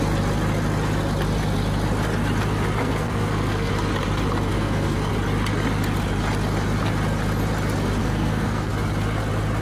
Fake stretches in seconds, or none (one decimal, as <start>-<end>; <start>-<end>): 2.8-3.7; 4.5-5.1; 8.0-8.7